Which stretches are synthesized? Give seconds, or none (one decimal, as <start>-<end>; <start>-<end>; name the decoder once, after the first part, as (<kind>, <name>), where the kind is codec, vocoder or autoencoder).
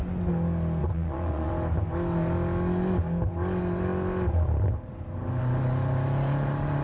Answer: 0.8-1.5 (vocoder, Vocos)